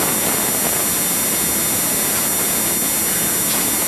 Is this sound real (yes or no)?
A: yes